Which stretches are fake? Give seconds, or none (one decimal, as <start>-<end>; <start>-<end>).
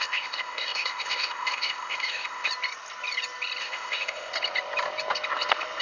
0.0-2.5; 3.6-4.3